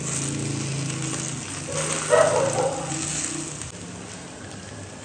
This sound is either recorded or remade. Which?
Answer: recorded